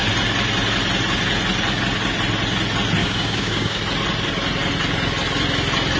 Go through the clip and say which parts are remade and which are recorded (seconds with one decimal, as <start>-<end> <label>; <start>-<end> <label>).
0.0-3.0 recorded; 3.0-3.8 remade; 3.8-6.0 recorded